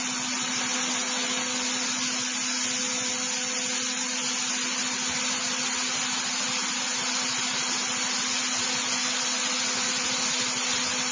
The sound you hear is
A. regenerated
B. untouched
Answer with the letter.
B